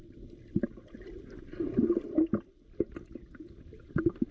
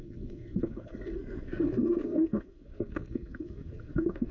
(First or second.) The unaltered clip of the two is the first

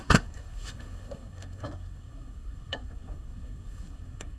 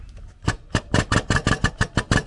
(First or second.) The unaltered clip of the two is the second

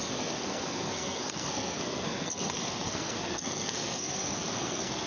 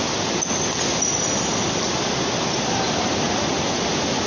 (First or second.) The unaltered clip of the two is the second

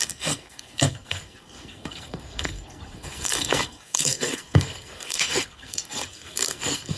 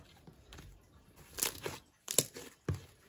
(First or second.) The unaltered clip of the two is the second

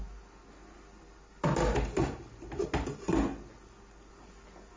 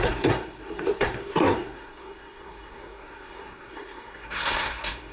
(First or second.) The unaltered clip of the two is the first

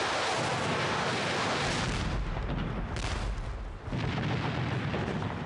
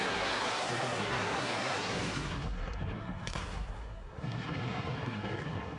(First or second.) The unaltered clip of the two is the first